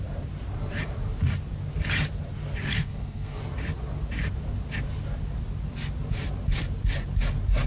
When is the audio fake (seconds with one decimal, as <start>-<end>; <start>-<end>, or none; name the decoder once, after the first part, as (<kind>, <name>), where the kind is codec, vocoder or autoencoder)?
2.7-3.4 (codec, SNAC)